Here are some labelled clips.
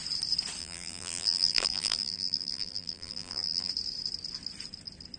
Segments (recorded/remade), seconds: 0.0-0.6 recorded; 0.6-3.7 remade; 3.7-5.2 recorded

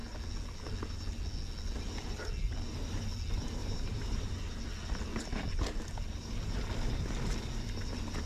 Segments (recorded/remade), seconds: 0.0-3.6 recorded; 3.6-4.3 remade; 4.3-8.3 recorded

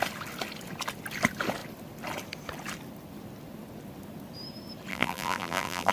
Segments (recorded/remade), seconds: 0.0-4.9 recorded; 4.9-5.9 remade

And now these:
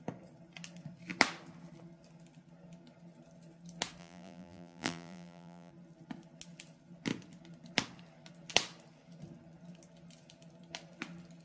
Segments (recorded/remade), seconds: 0.0-4.0 recorded; 4.0-5.7 remade; 5.7-11.4 recorded

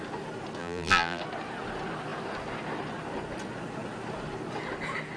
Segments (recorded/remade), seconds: 0.0-0.6 recorded; 0.6-1.2 remade; 1.2-5.2 recorded